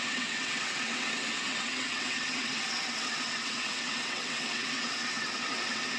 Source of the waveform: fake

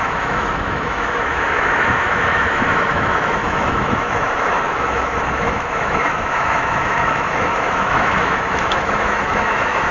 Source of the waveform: fake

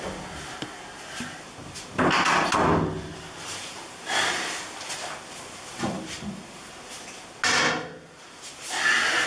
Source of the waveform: real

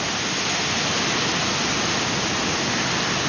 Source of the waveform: real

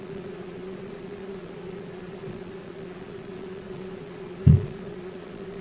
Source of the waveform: fake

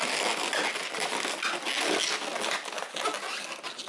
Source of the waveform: real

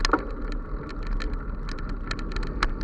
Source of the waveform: real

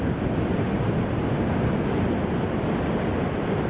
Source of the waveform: real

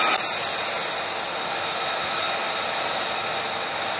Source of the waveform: real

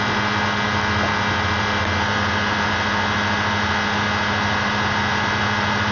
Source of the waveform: real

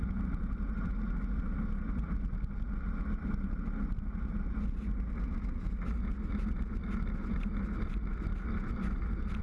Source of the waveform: real